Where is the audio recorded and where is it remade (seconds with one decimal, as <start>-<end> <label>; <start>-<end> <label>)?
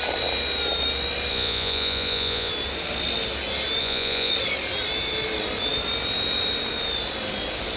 0.0-1.3 recorded; 1.3-2.5 remade; 2.5-3.8 recorded; 3.8-4.3 remade; 4.3-7.8 recorded